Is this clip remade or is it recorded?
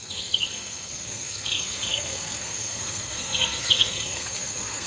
remade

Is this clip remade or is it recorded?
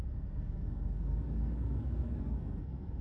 remade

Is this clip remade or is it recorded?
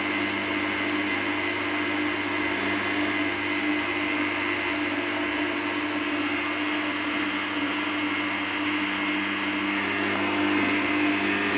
recorded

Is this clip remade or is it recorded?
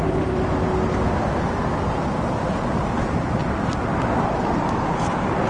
recorded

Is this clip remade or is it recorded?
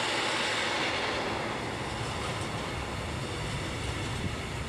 recorded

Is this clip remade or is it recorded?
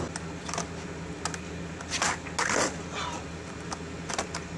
recorded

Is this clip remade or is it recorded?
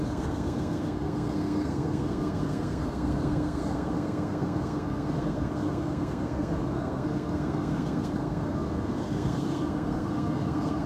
remade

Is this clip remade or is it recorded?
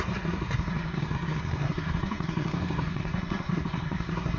remade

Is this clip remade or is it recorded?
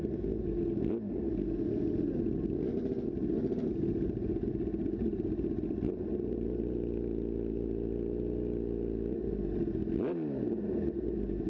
recorded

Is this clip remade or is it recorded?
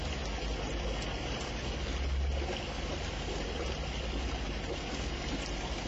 recorded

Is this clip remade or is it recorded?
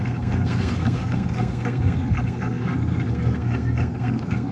remade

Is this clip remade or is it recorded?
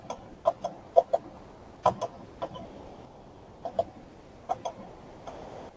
recorded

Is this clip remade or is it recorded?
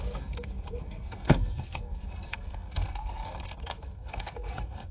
remade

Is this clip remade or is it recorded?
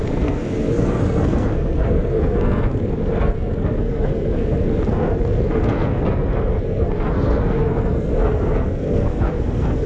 remade